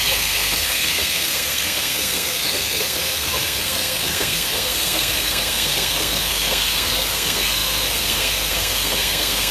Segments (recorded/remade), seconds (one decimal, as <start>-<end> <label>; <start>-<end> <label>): 0.0-9.5 remade